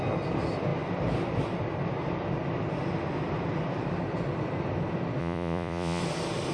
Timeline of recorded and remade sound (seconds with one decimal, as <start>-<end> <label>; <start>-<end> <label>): 0.0-5.2 recorded; 5.2-6.0 remade; 6.0-6.5 recorded